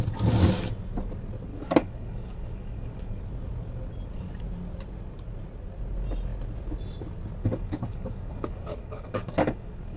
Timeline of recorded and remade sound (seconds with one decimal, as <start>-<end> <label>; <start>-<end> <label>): 0.0-1.5 recorded; 1.5-3.2 remade; 3.2-7.4 recorded; 7.4-10.0 remade